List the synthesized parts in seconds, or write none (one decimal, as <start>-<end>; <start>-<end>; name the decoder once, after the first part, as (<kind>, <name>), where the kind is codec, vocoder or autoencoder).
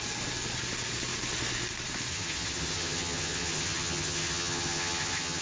2.1-5.4 (vocoder, HiFi-GAN)